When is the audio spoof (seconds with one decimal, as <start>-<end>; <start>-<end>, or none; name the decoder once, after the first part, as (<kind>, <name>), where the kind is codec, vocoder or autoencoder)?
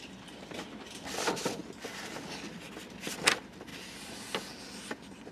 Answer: none